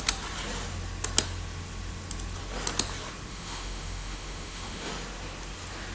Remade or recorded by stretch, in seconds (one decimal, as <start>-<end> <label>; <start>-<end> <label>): 0.0-3.3 recorded; 3.3-4.9 remade; 4.9-5.9 recorded